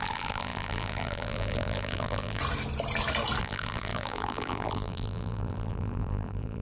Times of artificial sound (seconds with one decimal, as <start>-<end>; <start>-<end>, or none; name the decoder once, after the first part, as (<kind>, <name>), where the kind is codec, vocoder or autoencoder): 0.0-2.4 (vocoder, BigVGAN v2); 3.4-6.6